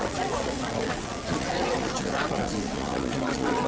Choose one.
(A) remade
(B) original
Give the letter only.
A